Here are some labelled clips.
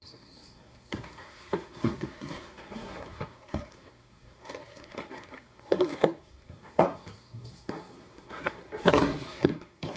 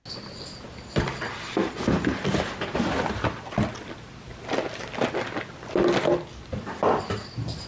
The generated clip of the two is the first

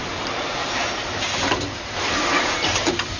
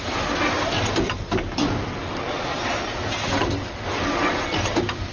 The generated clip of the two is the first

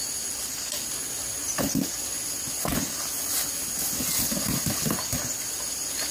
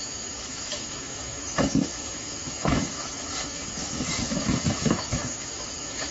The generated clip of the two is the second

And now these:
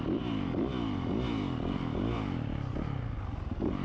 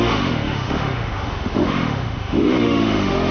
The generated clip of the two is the second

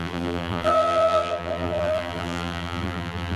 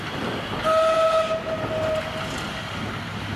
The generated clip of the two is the first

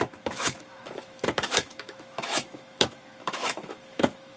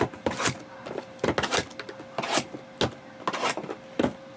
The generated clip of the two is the first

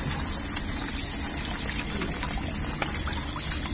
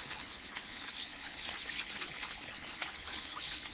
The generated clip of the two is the second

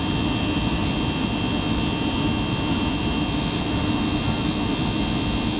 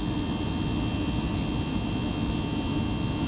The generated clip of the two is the first